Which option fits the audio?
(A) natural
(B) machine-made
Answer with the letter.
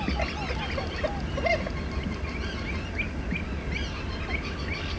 A